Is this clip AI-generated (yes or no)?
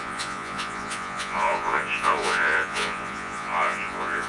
yes